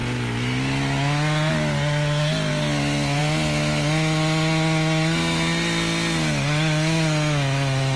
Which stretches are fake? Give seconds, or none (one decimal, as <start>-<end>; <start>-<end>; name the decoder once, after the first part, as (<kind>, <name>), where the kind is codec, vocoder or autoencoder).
none

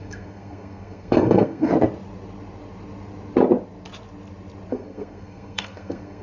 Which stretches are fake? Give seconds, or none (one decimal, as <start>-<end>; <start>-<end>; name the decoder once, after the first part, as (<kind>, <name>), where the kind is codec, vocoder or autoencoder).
0.0-1.7 (codec, SNAC); 4.7-6.2

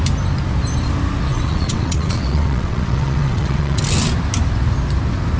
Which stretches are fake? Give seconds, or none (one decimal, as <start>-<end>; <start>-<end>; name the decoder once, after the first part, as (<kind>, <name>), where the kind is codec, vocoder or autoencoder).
1.3-3.8 (vocoder, WaveNeXt)

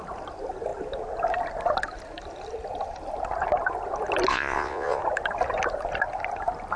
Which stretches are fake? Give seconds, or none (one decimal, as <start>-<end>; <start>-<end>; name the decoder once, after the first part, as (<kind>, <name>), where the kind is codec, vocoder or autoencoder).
4.3-5.0 (vocoder, Vocos)

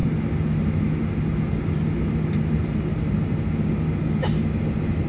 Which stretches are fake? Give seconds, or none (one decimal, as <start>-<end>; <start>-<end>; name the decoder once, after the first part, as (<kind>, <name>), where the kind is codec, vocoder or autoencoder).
none